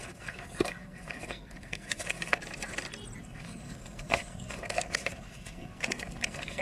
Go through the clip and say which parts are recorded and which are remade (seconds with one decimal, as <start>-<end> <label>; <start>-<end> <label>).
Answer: 0.0-2.4 remade; 2.4-3.2 recorded; 3.2-6.6 remade